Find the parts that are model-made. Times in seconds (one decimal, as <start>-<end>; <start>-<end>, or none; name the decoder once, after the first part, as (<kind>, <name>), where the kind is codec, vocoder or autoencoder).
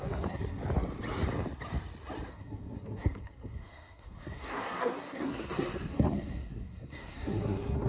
0.0-0.6 (codec, SNAC); 2.3-7.9